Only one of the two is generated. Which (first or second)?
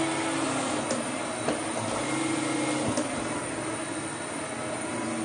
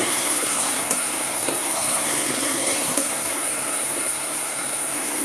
second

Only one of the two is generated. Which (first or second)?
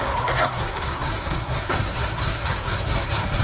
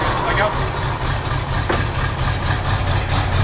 first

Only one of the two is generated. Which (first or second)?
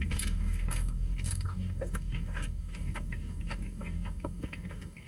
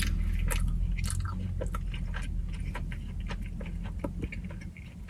first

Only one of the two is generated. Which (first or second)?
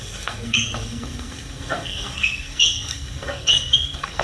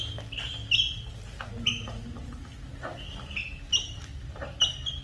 first